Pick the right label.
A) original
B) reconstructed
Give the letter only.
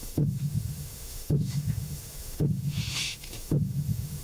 B